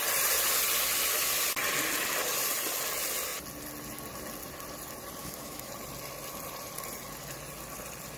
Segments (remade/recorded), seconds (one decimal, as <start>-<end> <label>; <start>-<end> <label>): 0.0-5.2 recorded; 5.2-5.7 remade; 5.7-8.2 recorded